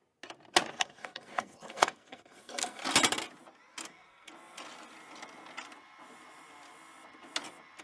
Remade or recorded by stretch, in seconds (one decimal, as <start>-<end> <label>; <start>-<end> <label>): 0.0-0.7 recorded; 0.7-2.8 remade; 2.8-3.9 recorded; 3.9-4.3 remade; 4.3-7.8 recorded